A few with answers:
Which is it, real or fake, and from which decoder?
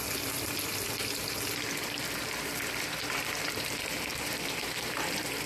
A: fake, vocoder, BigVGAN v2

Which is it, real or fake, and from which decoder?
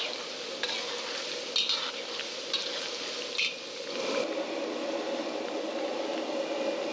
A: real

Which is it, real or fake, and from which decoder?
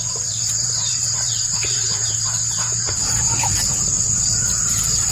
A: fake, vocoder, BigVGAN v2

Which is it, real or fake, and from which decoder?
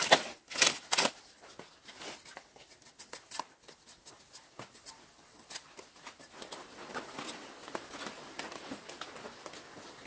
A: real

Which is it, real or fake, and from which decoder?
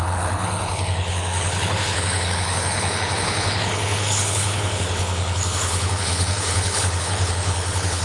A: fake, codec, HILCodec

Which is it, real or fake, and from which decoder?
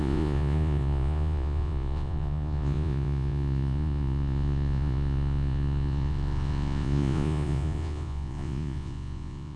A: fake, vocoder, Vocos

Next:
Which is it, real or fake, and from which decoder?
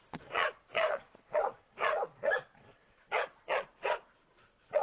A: fake, vocoder, Vocos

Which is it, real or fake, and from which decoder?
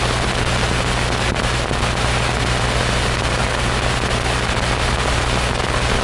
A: real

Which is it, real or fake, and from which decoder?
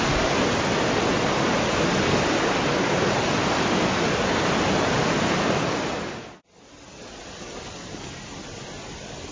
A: real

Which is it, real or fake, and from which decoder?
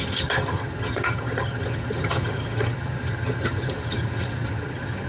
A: fake, vocoder, HiFi-GAN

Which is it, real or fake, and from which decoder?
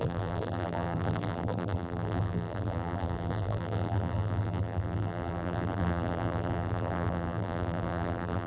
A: fake, vocoder, BigVGAN v2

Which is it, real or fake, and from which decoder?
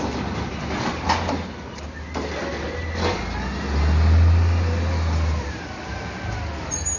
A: real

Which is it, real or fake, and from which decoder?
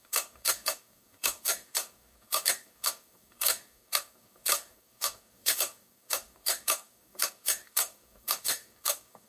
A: fake, codec, DAC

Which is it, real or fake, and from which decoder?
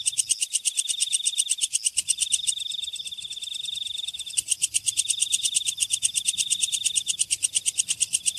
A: real